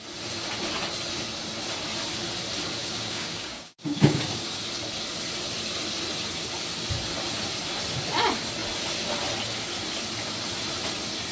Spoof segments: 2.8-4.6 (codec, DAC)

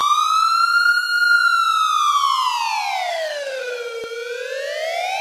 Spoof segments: 3.1-3.7 (autoencoder, DAC-VAE)

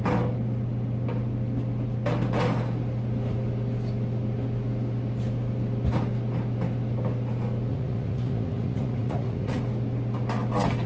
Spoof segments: 7.7-9.6 (vocoder, Vocos)

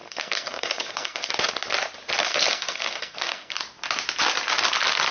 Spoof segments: 0.0-1.5 (codec, SNAC); 2.2-3.6

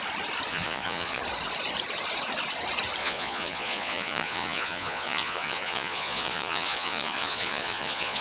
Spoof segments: 0.5-1.2 (vocoder, Vocos); 3.0-8.2

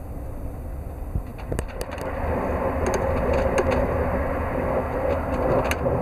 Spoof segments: none